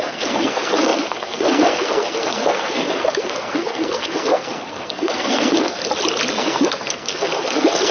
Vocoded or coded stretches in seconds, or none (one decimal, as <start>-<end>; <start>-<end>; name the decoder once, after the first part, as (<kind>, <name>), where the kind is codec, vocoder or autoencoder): 0.0-5.8 (codec, SNAC); 6.3-7.9

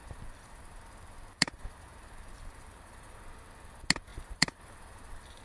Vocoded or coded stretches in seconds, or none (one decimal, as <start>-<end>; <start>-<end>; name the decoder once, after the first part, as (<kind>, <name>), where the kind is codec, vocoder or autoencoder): 0.0-3.2 (vocoder, BigVGAN v2); 4.1-5.4

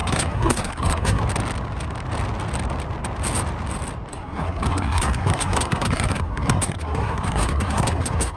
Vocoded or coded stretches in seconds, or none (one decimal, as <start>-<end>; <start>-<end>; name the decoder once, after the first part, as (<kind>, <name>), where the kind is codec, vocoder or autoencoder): 0.0-1.2 (codec, SNAC); 4.1-8.4

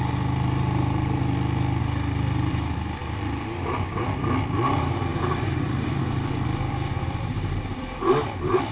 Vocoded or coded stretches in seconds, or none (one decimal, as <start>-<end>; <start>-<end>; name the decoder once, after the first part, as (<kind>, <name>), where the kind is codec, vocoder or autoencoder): 5.1-6.0 (vocoder, BigVGAN v2)

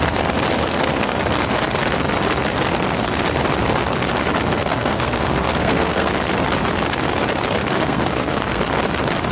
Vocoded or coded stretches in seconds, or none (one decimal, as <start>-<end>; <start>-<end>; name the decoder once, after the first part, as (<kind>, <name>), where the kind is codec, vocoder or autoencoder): 0.6-1.2 (codec, SNAC); 4.4-6.1; 7.6-8.6